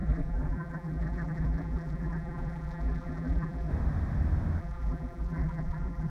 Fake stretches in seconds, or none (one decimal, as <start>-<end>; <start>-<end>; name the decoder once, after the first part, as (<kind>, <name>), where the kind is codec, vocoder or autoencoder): 0.0-3.7 (vocoder, BigVGAN v2); 4.6-6.1